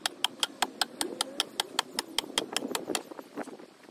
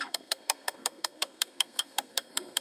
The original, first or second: first